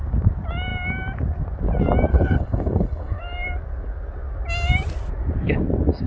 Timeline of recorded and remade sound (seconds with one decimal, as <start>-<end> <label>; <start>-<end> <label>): 0.0-2.1 recorded; 2.1-3.2 remade; 3.2-6.1 recorded